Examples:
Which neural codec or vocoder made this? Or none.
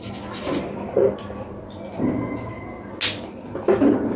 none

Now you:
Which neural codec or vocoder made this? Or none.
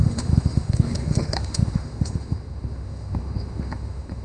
autoencoder, DAC-VAE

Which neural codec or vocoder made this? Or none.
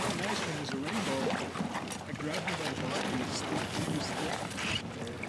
none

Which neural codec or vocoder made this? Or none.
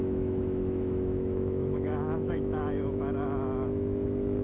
autoencoder, DAC-VAE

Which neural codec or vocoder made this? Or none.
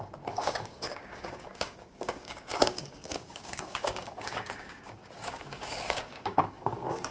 codec, DAC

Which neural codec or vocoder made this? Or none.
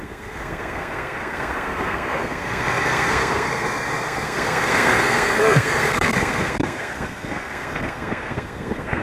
codec, SNAC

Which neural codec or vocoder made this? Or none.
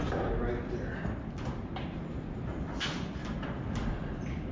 none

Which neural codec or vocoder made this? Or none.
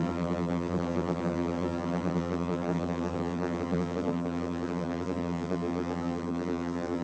vocoder, BigVGAN v2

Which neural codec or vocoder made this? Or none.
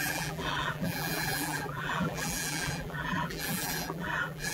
vocoder, BigVGAN v2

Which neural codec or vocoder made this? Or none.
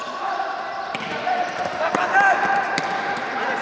none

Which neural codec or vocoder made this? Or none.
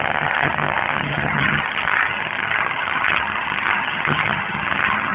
vocoder, HiFi-GAN